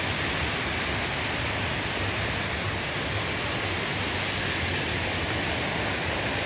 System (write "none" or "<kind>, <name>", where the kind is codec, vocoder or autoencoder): none